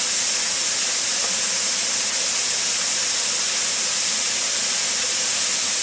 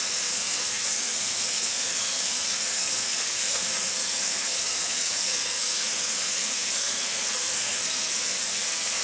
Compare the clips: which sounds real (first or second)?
first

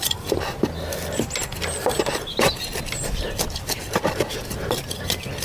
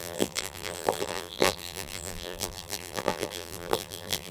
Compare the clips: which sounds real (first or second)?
first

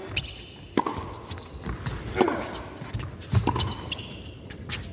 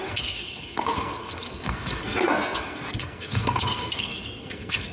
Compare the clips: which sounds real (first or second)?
first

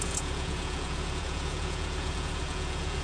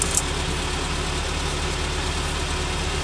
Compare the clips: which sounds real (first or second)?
second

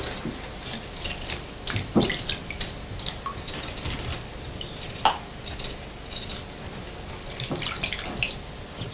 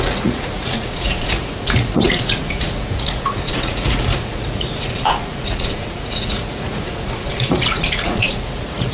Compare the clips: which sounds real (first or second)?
first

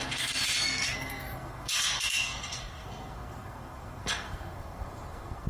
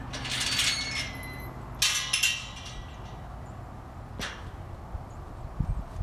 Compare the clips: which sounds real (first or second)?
second